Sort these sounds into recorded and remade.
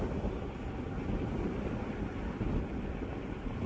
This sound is recorded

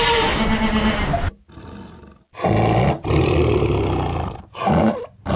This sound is recorded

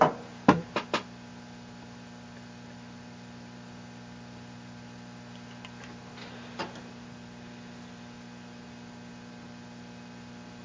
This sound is remade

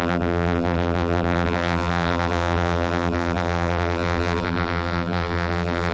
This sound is remade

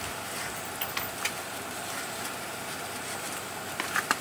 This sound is recorded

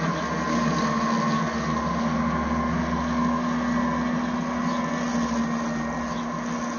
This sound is recorded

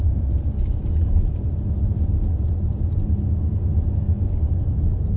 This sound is recorded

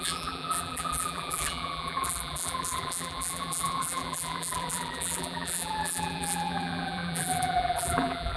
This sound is remade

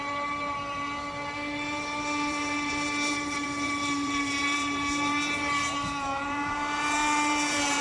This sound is remade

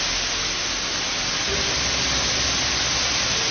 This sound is recorded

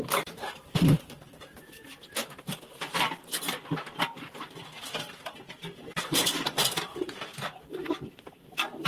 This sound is remade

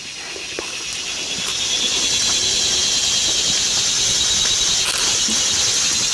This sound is recorded